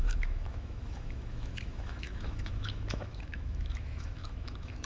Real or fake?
fake